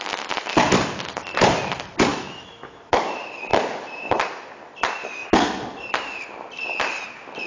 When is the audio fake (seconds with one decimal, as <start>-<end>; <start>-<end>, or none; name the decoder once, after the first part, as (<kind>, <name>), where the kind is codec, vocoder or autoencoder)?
2.1-2.9 (autoencoder, DAC-VAE)